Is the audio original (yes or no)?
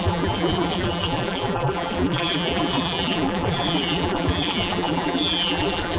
no